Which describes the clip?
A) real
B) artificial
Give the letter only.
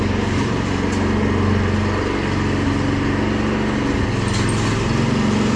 A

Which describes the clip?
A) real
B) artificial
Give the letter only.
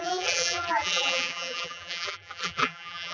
B